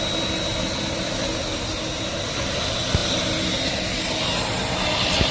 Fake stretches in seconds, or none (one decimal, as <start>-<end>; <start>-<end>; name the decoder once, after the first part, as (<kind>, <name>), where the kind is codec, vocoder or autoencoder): none